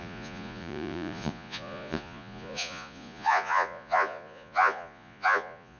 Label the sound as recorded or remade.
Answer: remade